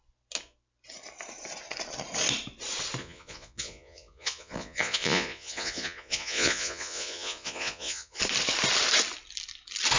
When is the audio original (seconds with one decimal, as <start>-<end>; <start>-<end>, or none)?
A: 0.0-3.0; 8.2-10.0